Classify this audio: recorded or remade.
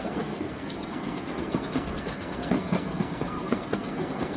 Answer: remade